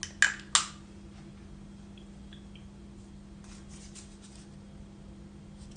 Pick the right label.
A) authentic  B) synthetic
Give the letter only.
A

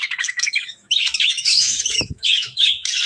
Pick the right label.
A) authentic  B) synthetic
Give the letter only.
B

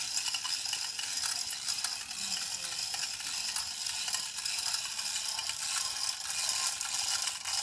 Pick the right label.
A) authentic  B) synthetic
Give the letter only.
A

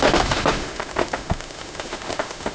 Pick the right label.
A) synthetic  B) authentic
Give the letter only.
A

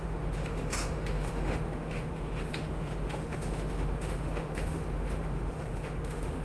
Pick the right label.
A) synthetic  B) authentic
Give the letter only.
A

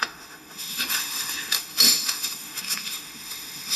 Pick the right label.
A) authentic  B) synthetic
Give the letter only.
B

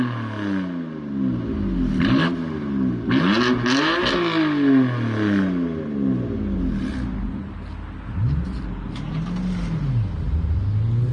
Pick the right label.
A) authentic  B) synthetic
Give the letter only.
A